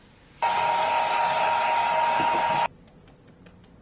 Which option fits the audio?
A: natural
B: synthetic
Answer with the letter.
A